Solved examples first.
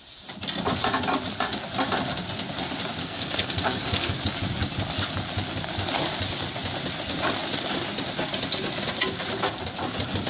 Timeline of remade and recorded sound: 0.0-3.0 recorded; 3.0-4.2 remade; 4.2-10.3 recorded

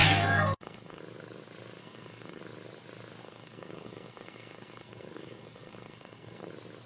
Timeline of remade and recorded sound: 0.0-1.0 remade; 1.0-1.8 recorded; 1.8-2.4 remade; 2.4-3.2 recorded; 3.2-6.5 remade; 6.5-6.9 recorded